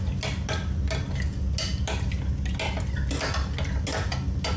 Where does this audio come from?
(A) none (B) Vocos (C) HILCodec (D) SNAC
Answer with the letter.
A